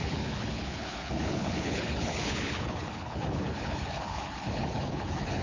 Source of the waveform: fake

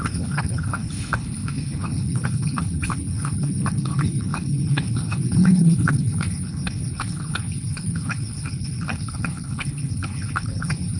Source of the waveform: fake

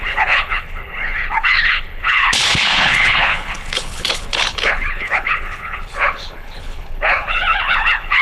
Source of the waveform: fake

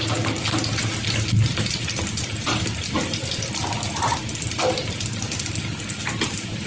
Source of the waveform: real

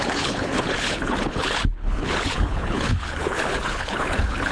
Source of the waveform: fake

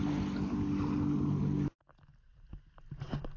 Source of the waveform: real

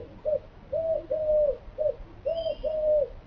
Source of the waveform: real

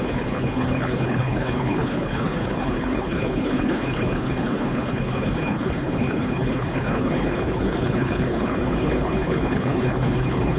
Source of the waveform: fake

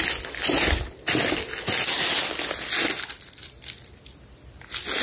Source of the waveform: real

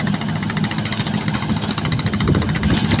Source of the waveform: real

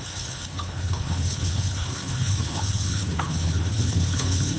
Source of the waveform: fake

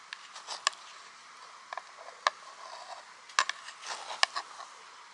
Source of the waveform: real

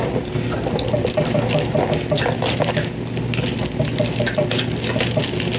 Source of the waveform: real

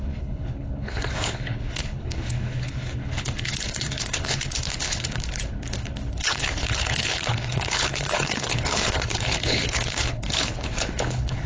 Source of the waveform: fake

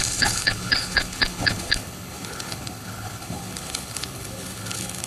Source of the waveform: fake